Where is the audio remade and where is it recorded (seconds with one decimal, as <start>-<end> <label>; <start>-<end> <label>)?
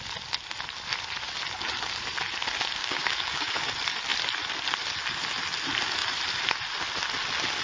0.0-2.8 recorded; 2.8-3.6 remade; 3.6-7.6 recorded